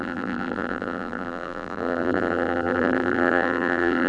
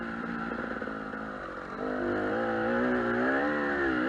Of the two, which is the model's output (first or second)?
first